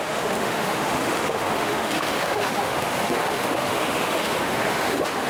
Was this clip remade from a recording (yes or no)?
yes